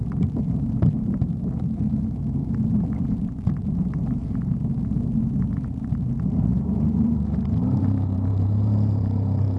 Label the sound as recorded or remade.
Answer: remade